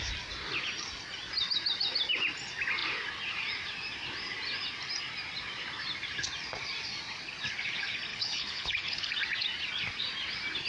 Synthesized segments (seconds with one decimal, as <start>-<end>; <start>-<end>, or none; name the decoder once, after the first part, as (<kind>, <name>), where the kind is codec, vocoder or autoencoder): 8.1-9.1 (codec, HILCodec)